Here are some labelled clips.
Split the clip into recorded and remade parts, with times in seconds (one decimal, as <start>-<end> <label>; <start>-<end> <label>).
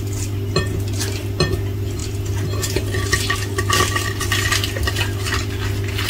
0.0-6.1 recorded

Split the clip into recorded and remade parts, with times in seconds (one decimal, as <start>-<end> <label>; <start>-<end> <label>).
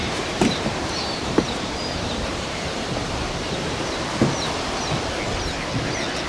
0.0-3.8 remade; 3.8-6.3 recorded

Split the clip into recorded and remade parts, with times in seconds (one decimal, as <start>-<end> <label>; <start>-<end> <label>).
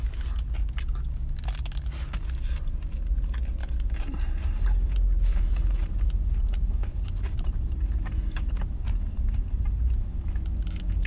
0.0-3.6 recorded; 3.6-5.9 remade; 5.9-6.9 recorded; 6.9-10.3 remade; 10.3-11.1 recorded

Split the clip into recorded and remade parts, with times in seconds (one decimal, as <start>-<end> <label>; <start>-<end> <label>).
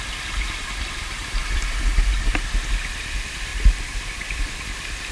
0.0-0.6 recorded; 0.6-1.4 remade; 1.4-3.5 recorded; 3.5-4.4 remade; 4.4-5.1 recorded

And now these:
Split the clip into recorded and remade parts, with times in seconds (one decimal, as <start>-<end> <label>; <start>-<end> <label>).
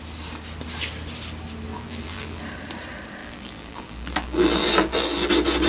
0.0-1.7 recorded; 1.7-2.4 remade; 2.4-3.2 recorded; 3.2-5.3 remade; 5.3-5.7 recorded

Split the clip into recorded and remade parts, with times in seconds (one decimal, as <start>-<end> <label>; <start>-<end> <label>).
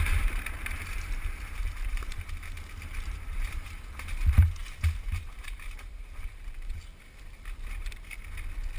0.0-4.6 remade; 4.6-5.1 recorded; 5.1-6.9 remade; 6.9-8.8 recorded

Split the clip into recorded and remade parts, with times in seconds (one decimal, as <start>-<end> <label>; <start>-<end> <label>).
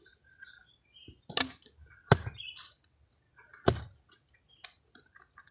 0.0-5.5 recorded